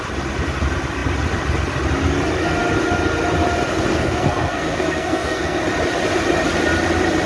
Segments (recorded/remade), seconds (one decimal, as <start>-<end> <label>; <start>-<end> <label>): 0.0-3.9 recorded; 3.9-5.6 remade; 5.6-7.3 recorded